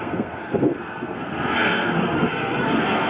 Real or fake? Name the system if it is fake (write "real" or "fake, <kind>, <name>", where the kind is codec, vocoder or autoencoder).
fake, codec, SNAC